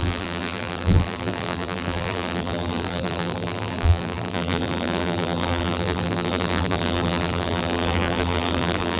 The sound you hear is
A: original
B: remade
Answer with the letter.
B